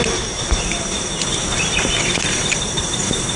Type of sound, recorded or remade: remade